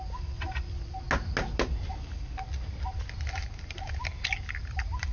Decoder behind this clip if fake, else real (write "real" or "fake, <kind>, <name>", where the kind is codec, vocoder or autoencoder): real